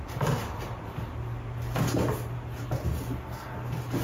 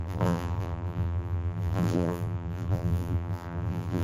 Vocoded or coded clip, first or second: second